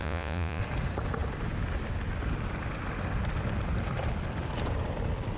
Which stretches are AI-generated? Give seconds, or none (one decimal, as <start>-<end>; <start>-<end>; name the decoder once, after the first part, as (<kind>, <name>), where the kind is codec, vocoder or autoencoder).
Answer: 0.0-0.6 (vocoder, Vocos)

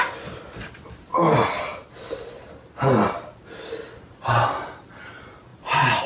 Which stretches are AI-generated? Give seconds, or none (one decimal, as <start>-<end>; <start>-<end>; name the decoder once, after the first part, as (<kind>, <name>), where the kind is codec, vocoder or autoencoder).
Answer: none

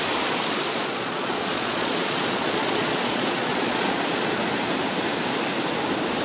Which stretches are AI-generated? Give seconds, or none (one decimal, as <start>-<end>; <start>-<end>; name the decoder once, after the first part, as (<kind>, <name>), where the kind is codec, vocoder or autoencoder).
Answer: 0.7-4.4 (vocoder, Vocos)